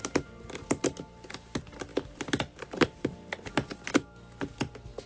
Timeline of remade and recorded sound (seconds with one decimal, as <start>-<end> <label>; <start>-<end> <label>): 0.0-5.1 recorded